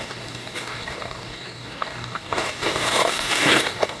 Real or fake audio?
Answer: fake